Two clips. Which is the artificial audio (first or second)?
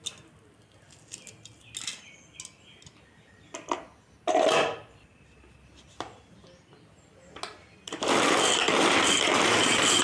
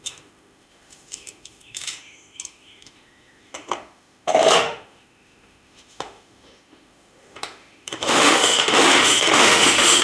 second